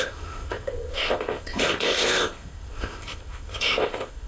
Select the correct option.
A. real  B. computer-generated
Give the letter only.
B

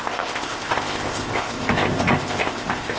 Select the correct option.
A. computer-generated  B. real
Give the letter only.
A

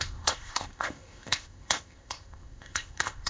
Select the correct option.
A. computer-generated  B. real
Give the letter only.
A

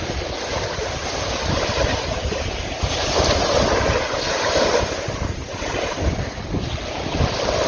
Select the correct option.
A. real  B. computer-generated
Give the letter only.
A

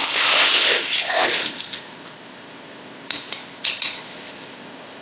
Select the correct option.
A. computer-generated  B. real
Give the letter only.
A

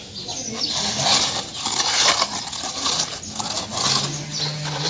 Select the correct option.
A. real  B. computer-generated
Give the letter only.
A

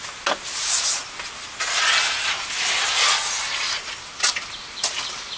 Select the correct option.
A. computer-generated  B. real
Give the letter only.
B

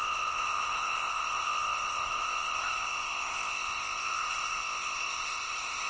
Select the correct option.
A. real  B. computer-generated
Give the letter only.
B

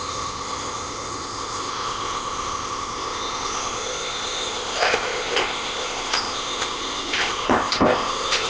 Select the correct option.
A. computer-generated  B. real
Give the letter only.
A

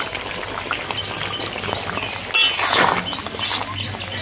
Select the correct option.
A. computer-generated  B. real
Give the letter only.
B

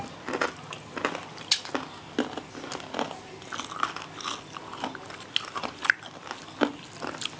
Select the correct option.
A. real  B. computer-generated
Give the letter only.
A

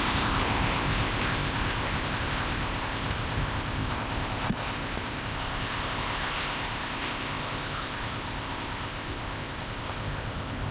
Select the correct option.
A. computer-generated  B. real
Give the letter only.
A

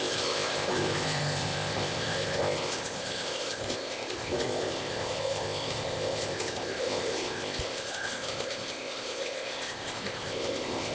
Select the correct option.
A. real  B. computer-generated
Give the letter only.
B